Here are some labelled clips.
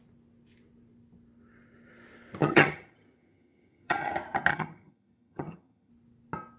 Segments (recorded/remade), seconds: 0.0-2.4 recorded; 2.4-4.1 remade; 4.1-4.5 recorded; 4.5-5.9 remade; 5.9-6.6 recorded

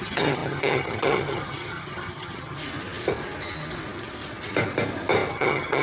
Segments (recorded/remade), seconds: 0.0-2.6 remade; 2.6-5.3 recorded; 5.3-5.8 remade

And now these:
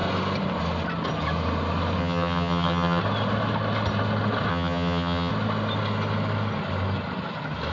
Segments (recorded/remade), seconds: 0.0-2.0 recorded; 2.0-3.0 remade; 3.0-4.5 recorded; 4.5-5.3 remade; 5.3-7.7 recorded

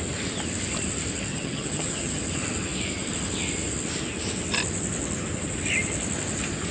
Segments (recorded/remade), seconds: 0.0-1.3 recorded; 1.3-2.2 remade; 2.2-6.7 recorded

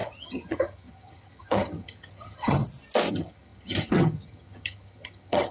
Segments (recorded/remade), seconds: 0.0-2.6 remade; 2.6-3.1 recorded; 3.1-5.5 remade